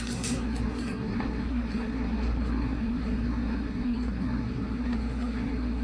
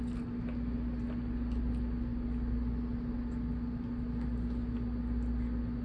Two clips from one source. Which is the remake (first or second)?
first